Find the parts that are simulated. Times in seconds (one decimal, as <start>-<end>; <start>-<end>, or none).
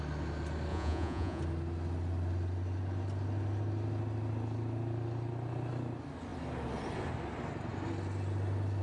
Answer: 0.7-1.4